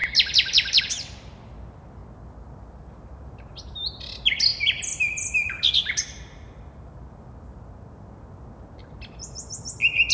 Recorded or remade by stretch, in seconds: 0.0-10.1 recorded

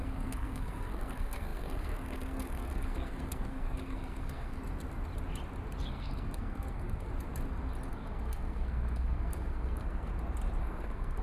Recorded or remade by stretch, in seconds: 0.0-4.6 remade; 4.6-5.8 recorded; 5.8-7.1 remade; 7.1-7.9 recorded; 7.9-10.1 remade; 10.1-10.6 recorded; 10.6-11.2 remade

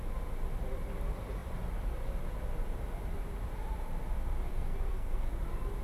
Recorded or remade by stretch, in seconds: 0.0-4.5 recorded; 4.5-5.3 remade; 5.3-5.8 recorded